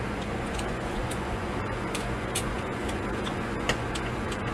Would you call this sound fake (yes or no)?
yes